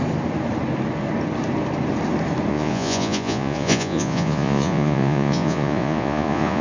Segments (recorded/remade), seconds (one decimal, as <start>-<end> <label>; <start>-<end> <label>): 0.0-2.5 recorded; 2.5-6.6 remade